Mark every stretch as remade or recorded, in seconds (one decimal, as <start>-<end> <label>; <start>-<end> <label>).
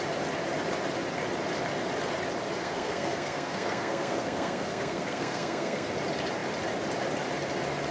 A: 0.0-2.6 recorded; 2.6-5.9 remade; 5.9-7.9 recorded